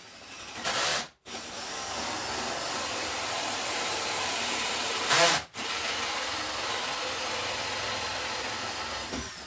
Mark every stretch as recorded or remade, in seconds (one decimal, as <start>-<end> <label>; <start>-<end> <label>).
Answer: 0.0-2.9 recorded; 2.9-6.4 remade; 6.4-9.5 recorded